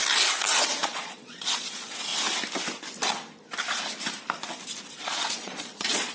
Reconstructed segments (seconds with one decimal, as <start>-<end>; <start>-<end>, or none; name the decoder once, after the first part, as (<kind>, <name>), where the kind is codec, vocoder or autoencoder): 0.8-2.1 (vocoder, Vocos); 4.9-6.1